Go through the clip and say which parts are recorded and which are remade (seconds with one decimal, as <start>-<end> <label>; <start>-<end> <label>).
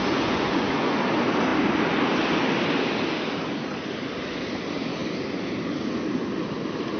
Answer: 0.0-1.0 remade; 1.0-7.0 recorded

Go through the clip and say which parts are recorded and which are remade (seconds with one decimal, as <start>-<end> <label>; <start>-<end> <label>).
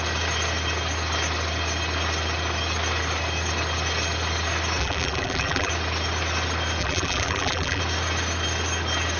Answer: 0.0-4.8 recorded; 4.8-5.7 remade; 5.7-6.8 recorded; 6.8-7.8 remade; 7.8-9.2 recorded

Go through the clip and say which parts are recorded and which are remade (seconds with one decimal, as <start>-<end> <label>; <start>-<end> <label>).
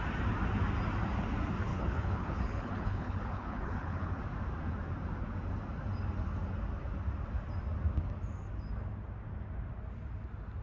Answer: 0.0-1.7 recorded; 1.7-4.2 remade; 4.2-10.6 recorded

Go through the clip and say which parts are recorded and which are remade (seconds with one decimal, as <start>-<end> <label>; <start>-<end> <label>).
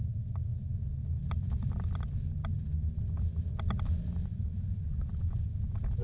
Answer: 0.0-4.2 recorded; 4.2-5.1 remade; 5.1-6.0 recorded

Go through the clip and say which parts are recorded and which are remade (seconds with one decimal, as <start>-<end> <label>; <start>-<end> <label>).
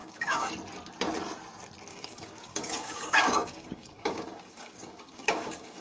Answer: 0.0-0.5 remade; 0.5-1.9 recorded; 1.9-5.8 remade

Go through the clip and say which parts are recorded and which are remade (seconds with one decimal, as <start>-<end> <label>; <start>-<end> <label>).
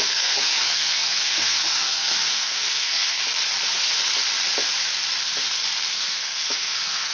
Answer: 0.0-3.2 remade; 3.2-5.9 recorded; 5.9-7.1 remade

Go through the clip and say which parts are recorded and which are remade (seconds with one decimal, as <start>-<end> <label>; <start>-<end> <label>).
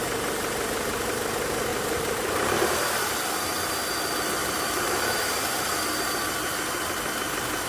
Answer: 0.0-1.7 recorded; 1.7-3.1 remade; 3.1-4.4 recorded; 4.4-5.5 remade; 5.5-7.7 recorded